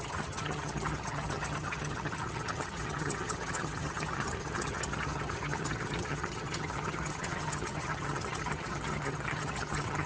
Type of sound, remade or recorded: remade